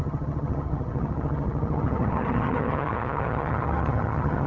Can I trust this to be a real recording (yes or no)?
no